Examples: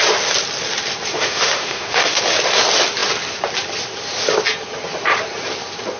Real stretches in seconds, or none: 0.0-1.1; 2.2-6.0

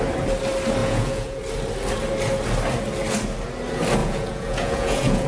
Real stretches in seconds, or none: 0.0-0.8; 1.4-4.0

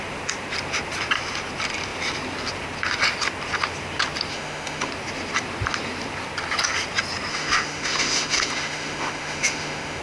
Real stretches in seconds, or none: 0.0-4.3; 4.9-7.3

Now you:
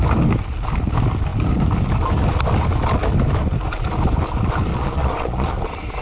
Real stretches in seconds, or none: 0.0-4.7; 5.5-6.0

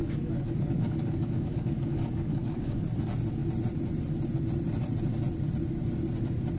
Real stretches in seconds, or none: 2.8-6.6